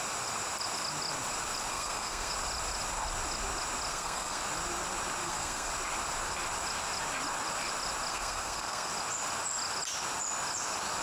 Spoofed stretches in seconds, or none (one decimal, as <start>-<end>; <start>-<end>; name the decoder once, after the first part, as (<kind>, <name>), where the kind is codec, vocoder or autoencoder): 1.7-2.3 (codec, SNAC); 3.9-4.4; 5.2-5.7; 8.1-8.9